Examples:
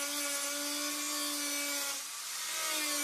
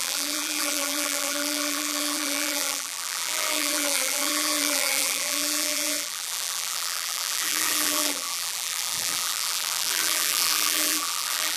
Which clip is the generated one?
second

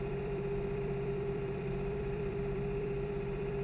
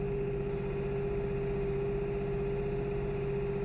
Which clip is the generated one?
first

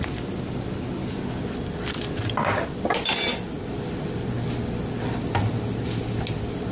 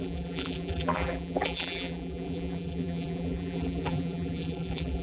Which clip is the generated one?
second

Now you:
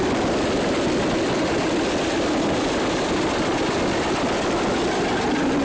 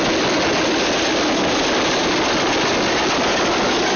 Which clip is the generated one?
first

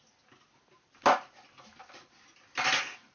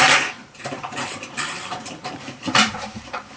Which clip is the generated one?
second